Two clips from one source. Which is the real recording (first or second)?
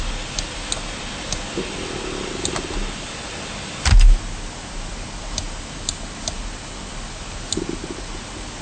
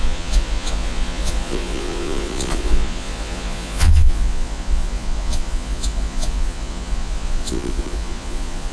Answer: first